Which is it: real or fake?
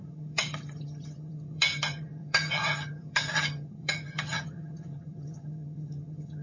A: fake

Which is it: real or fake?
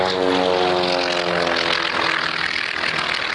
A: real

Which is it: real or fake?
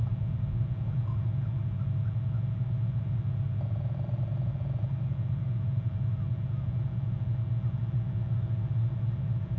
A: real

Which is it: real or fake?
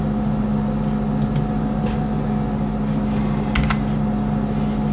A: real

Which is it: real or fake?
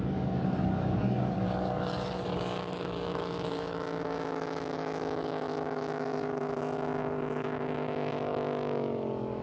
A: fake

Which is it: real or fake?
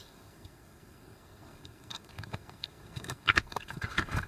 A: fake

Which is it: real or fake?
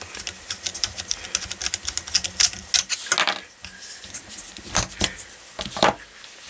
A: real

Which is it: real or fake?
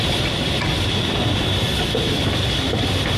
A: real